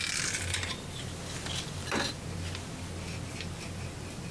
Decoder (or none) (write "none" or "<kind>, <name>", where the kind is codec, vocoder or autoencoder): none